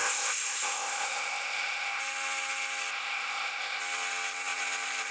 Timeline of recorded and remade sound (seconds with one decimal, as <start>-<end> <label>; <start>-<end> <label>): 0.0-2.0 remade; 2.0-2.9 recorded; 2.9-3.8 remade; 3.8-5.1 recorded